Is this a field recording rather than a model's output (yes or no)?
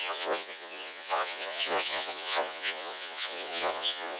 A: no